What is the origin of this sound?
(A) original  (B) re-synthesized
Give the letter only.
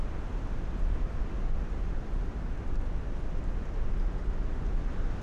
A